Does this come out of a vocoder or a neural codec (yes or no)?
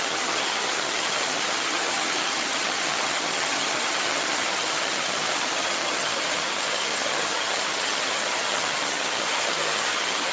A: yes